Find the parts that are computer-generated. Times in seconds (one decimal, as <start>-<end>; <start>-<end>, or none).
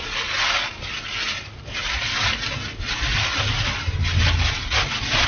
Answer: none